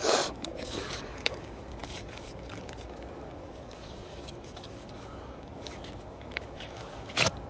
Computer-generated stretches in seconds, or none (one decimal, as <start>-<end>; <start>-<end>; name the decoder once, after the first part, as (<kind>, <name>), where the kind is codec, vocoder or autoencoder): 0.0-7.5 (codec, DAC)

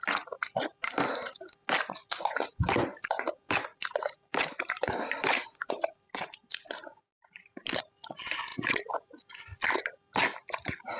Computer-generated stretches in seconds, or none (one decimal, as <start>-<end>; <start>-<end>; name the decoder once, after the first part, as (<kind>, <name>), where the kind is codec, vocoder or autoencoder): 2.9-3.4 (vocoder, BigVGAN v2); 4.3-7.8; 8.5-9.1

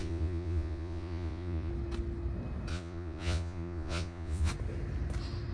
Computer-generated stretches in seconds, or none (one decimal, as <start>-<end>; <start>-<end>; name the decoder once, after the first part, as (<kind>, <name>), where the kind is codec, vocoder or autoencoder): 0.0-1.7 (vocoder, Vocos); 2.7-4.5

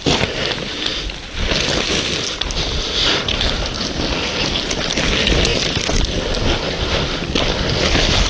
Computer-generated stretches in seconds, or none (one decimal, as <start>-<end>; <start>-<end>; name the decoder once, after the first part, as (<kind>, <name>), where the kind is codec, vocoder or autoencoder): none

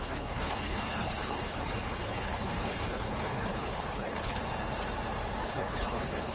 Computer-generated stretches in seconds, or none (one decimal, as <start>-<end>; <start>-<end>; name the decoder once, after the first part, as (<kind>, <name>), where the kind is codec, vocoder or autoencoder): 0.0-4.4 (codec, HILCodec); 5.4-6.3

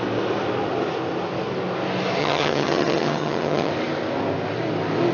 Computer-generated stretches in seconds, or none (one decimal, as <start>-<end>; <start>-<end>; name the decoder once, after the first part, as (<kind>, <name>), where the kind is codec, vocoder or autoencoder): 2.2-3.7 (vocoder, HiFi-GAN)

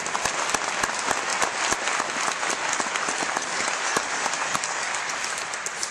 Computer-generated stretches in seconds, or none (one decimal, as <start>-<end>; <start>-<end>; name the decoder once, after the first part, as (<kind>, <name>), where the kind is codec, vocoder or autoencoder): 3.4-5.0 (codec, DAC)